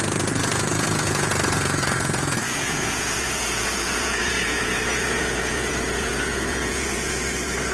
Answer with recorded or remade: remade